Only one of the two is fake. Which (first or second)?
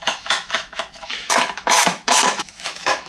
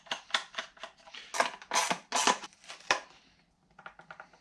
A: first